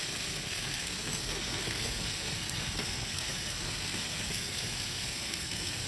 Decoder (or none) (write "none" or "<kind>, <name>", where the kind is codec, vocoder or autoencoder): codec, SNAC